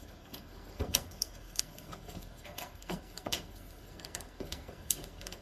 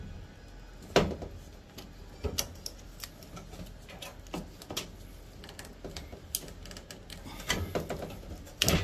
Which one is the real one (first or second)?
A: second